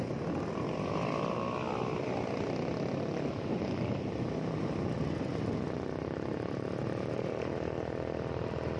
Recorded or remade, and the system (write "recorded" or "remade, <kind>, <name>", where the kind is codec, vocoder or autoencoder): recorded